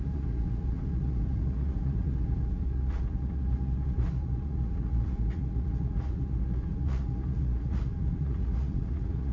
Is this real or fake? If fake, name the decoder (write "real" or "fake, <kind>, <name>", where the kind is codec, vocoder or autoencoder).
fake, vocoder, Vocos